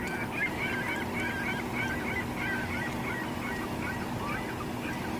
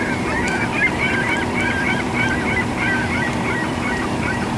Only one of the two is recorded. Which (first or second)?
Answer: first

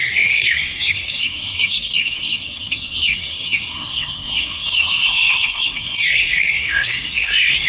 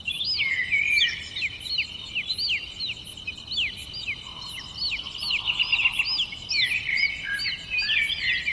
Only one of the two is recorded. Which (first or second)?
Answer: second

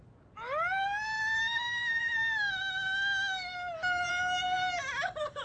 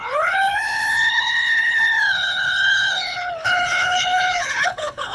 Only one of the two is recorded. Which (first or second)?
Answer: first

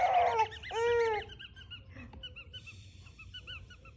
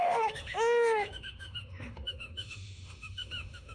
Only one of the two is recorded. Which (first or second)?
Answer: first